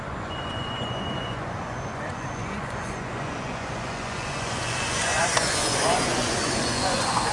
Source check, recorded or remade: remade